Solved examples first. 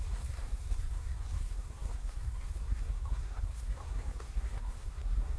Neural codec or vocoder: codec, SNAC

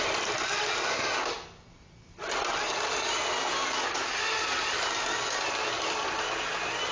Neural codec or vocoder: none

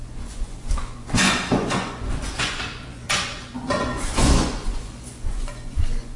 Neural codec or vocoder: vocoder, Vocos